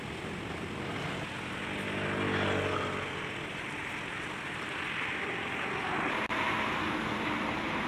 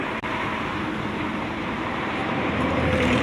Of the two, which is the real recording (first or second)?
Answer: first